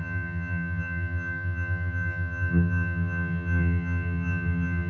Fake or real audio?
fake